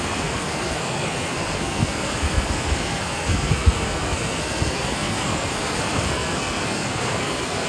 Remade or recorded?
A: remade